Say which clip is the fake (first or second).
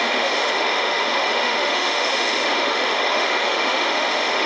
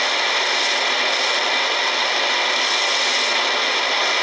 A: first